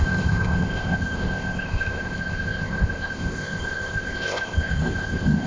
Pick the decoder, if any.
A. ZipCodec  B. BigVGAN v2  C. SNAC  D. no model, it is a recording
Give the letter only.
A